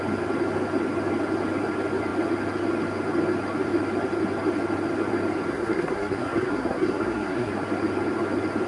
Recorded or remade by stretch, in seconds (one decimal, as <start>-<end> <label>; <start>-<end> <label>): 0.0-5.5 recorded; 5.5-7.5 remade; 7.5-8.7 recorded